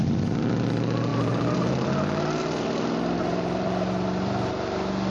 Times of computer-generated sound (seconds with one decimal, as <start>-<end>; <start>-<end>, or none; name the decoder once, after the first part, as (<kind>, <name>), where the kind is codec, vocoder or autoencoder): 1.1-1.9 (vocoder, BigVGAN v2); 3.2-4.5